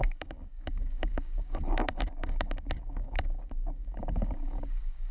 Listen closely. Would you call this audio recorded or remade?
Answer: remade